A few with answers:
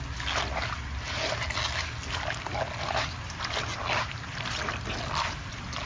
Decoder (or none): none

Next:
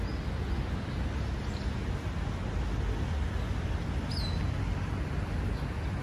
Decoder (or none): none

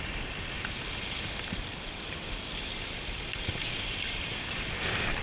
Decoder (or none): vocoder, BigVGAN v2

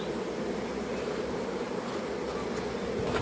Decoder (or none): none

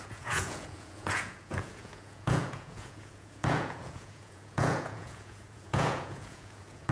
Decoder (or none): vocoder, Vocos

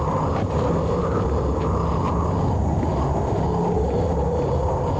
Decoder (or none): none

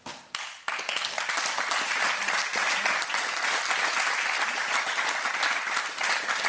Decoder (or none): none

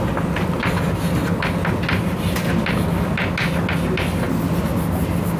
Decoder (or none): none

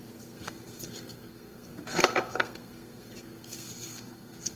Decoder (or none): codec, SNAC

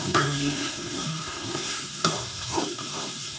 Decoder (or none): codec, SNAC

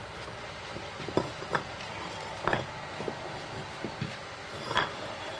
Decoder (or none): none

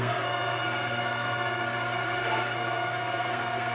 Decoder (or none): codec, SNAC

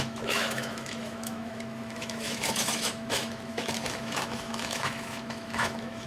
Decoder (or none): autoencoder, DAC-VAE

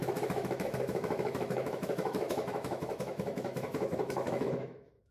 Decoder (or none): autoencoder, DAC-VAE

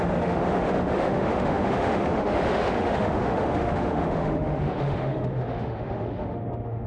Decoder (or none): autoencoder, DAC-VAE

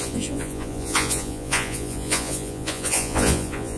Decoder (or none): vocoder, Vocos